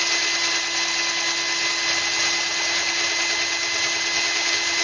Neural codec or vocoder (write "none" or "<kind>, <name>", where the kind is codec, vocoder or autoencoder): none